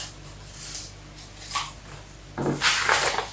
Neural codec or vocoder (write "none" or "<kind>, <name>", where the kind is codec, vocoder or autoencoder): none